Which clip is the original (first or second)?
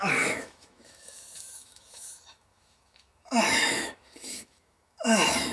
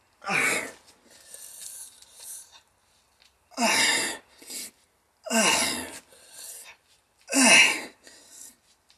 second